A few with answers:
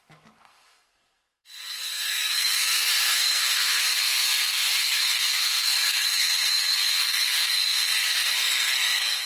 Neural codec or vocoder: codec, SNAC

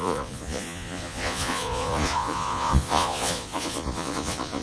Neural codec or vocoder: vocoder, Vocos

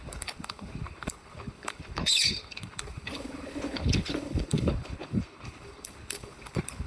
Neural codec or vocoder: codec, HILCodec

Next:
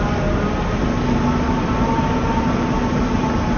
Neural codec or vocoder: none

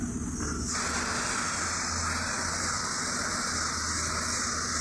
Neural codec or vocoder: none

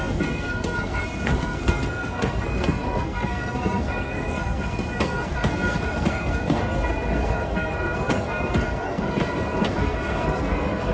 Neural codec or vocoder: codec, SNAC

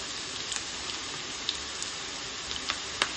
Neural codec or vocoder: none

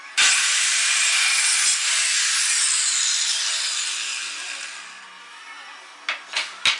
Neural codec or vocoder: none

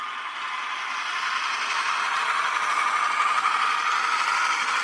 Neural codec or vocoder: vocoder, BigVGAN v2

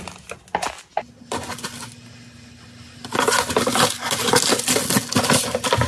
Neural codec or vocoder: none